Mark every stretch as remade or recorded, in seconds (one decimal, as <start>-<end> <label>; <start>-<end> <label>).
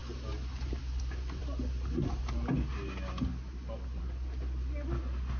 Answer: 0.0-5.4 recorded